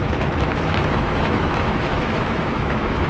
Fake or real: fake